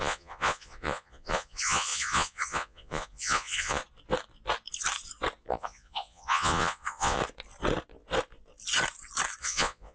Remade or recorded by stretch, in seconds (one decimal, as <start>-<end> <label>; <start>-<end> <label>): 0.0-3.8 remade; 3.8-5.5 recorded; 5.5-7.2 remade; 7.2-9.4 recorded; 9.4-9.9 remade